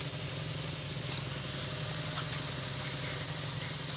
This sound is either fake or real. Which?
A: real